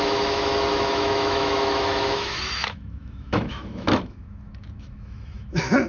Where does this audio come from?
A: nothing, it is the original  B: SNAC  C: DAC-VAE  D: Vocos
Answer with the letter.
C